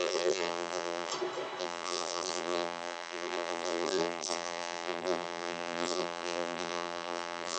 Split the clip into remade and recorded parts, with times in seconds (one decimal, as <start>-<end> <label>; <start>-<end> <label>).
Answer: 0.0-1.1 remade; 1.1-1.6 recorded; 1.6-7.6 remade